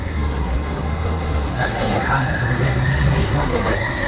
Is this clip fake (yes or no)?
yes